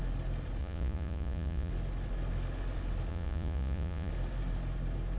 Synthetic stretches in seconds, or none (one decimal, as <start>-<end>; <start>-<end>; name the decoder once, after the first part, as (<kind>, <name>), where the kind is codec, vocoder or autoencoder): 0.6-1.7 (vocoder, Vocos); 3.1-4.1